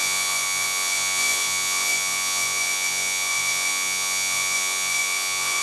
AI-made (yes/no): yes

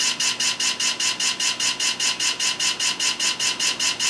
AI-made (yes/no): no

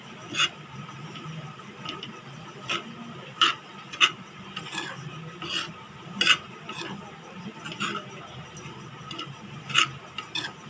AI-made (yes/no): no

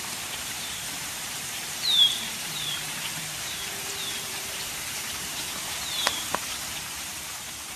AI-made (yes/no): yes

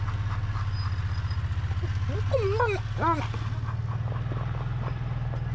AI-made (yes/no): no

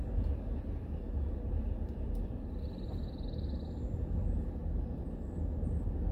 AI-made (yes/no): no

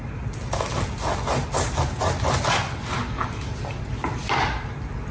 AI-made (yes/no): no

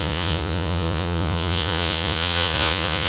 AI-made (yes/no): yes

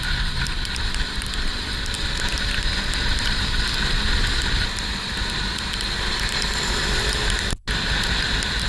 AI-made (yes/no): no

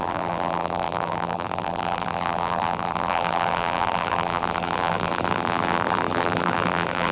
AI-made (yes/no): yes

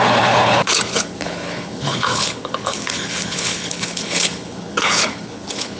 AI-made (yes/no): yes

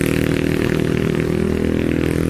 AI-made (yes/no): no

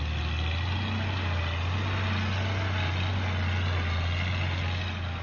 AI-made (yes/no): no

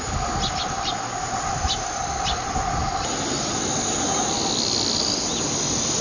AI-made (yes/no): no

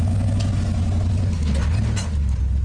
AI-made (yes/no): no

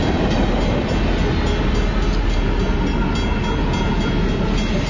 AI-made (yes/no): no